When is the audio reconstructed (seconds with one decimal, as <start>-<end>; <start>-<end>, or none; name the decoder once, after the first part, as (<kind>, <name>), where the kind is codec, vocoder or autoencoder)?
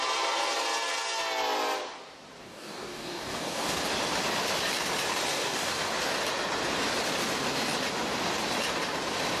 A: 2.4-3.8 (codec, DAC); 5.3-5.9